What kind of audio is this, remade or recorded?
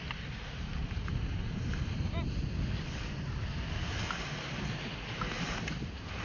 recorded